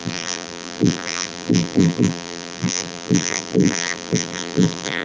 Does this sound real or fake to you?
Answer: fake